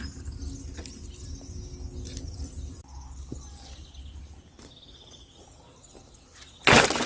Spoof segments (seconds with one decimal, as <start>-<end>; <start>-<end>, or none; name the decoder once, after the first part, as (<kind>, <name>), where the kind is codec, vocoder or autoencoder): none